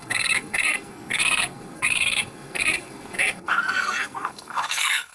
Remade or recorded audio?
remade